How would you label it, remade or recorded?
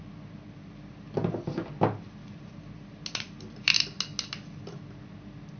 recorded